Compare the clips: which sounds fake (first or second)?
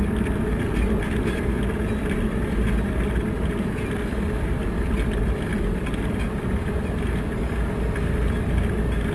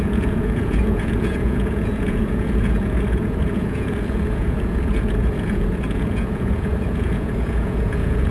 second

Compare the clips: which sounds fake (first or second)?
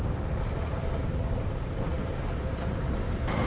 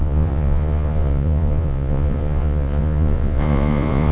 second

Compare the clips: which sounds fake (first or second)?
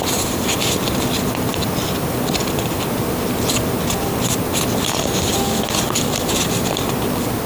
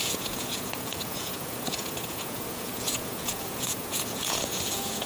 second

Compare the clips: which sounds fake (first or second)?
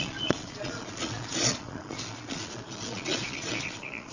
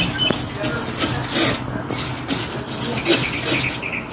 first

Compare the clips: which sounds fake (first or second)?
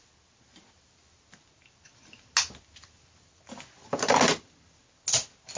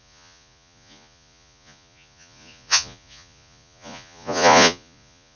second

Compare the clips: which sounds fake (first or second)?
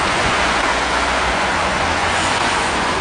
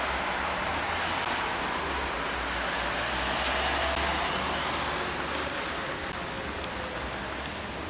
first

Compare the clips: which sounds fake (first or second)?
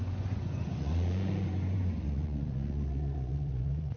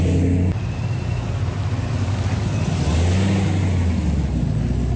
first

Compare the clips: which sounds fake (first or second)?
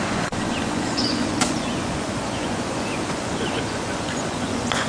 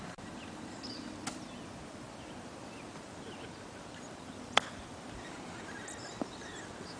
first